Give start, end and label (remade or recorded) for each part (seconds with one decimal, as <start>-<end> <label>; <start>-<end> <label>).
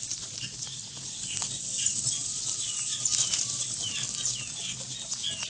0.0-2.9 recorded; 2.9-3.9 remade; 3.9-5.5 recorded